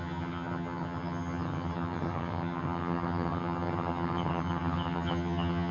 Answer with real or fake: fake